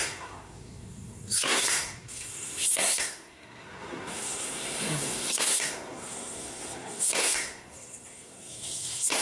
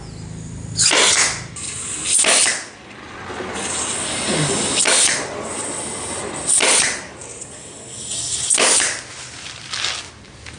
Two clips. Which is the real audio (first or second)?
second